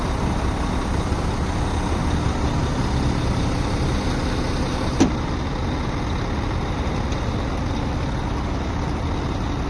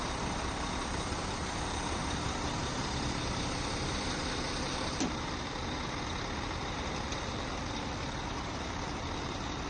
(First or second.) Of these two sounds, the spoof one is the second